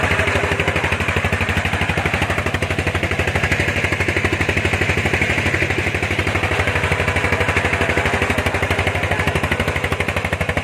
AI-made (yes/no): no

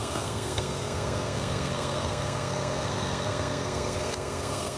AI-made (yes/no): yes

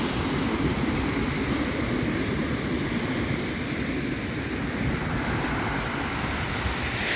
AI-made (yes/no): no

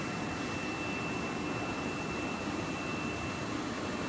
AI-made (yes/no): no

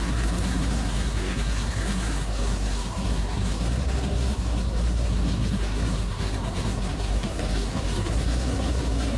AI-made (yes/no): yes